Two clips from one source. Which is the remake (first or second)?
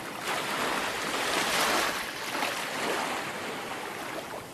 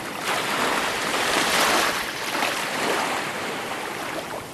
second